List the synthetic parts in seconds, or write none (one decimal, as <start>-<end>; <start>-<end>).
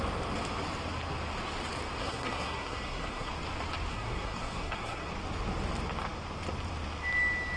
2.0-3.3; 3.9-5.1